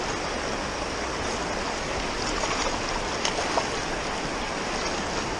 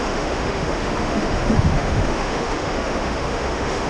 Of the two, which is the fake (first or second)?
second